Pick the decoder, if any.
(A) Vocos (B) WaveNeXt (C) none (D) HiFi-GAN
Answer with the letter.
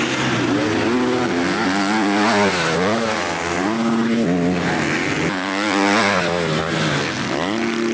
C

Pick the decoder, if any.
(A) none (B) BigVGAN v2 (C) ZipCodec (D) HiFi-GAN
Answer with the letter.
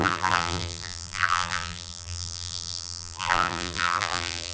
B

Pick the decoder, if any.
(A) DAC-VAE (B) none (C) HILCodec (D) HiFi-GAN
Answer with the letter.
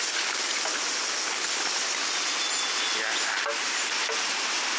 B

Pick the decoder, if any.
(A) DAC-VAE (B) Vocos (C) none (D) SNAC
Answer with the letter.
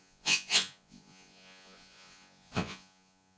B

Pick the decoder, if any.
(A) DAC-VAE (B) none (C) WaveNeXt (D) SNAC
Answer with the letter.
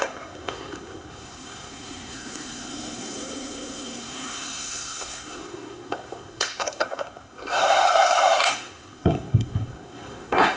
D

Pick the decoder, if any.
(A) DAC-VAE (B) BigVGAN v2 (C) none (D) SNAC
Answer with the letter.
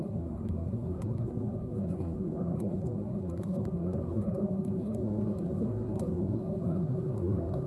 D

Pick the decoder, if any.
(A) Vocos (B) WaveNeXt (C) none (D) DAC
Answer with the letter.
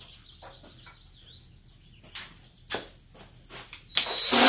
C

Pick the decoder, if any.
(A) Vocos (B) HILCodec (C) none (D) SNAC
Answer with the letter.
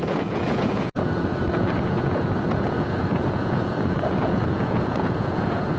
A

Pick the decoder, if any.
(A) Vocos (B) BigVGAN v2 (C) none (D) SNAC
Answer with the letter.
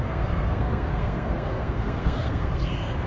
D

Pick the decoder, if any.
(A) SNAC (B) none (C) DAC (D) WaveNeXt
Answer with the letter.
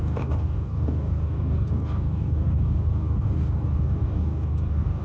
C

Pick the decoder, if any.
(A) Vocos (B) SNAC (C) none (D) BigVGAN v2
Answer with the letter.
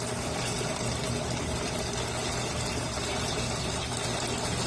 C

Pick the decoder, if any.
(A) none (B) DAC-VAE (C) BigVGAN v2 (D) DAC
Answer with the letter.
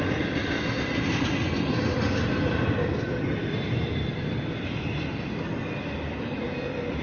A